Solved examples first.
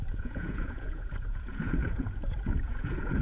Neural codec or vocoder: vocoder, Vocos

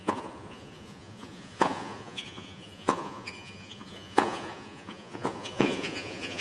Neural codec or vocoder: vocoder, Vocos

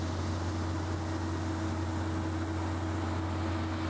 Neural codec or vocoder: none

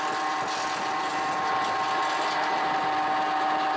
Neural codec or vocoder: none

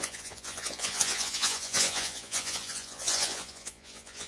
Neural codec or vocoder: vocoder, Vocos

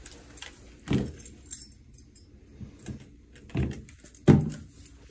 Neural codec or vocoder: none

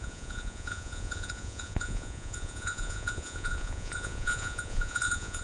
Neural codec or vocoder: vocoder, Vocos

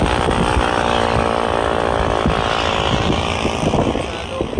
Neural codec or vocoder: none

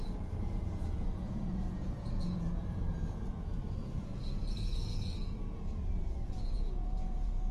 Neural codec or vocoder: vocoder, Vocos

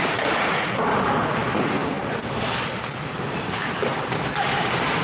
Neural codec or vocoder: none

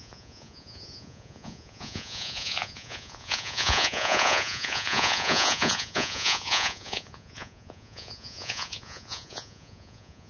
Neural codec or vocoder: vocoder, Vocos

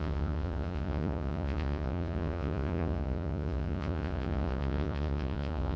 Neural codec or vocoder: vocoder, Vocos